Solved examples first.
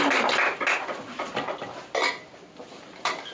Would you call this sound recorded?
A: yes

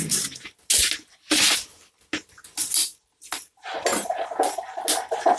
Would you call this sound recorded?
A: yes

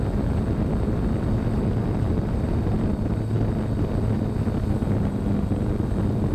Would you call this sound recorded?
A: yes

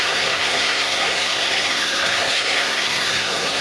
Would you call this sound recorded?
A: no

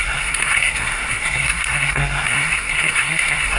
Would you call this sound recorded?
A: no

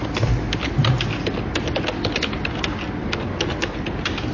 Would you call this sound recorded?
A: yes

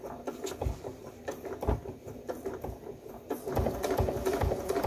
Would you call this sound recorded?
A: yes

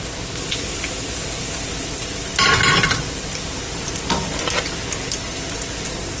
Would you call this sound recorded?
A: yes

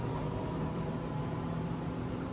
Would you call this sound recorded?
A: no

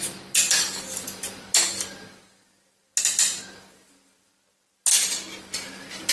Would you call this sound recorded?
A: yes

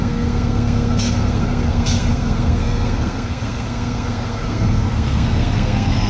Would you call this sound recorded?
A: no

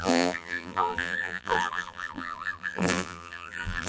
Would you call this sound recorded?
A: no